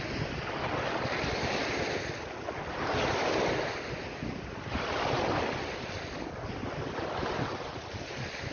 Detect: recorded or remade recorded